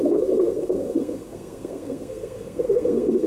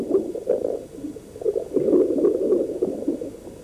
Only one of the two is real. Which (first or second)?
second